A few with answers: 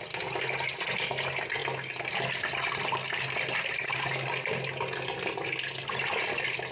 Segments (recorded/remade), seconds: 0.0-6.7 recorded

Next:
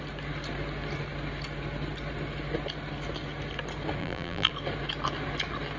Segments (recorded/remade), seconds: 0.0-4.0 recorded; 4.0-4.5 remade; 4.5-5.8 recorded